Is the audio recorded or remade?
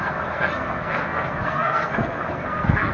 remade